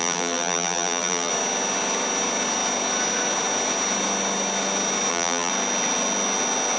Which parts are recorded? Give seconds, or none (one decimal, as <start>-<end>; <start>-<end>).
1.3-5.1; 5.5-6.8